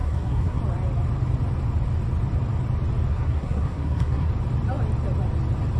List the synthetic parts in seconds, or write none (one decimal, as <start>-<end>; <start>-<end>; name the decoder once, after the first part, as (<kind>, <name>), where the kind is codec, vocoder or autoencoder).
0.0-0.6 (codec, SNAC); 3.1-4.3

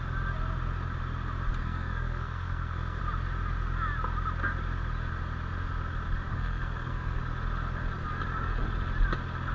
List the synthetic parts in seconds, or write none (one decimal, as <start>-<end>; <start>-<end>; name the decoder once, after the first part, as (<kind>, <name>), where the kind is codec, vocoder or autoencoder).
1.6-3.0 (codec, SNAC); 6.3-7.2

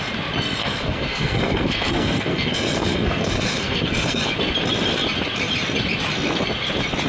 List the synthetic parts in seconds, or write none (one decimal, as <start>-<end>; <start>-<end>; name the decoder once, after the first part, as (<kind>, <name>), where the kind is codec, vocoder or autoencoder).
0.6-4.3 (codec, SNAC)